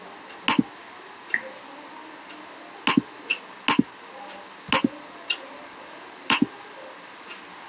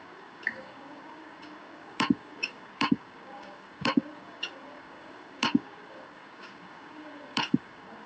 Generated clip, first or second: second